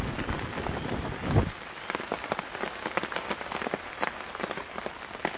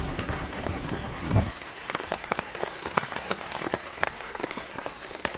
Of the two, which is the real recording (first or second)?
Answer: first